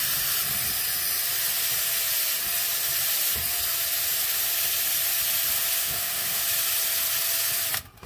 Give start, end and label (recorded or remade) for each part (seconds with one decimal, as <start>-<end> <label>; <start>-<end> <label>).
0.0-5.8 recorded; 5.8-6.4 remade; 6.4-8.1 recorded